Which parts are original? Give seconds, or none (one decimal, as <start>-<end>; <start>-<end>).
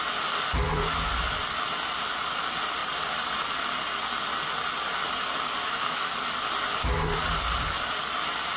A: 0.0-5.6; 6.1-8.6